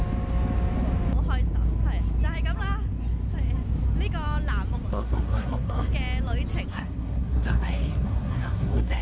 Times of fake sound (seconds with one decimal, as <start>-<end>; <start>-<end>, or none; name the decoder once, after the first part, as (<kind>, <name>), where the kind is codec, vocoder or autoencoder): 4.9-5.9 (codec, SNAC); 6.7-9.0